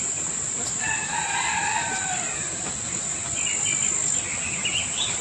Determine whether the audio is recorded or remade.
recorded